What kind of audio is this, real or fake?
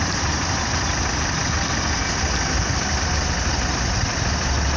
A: real